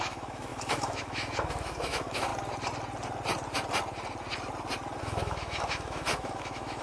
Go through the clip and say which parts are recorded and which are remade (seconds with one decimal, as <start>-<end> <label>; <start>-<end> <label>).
0.0-2.3 remade; 2.3-5.0 recorded; 5.0-6.8 remade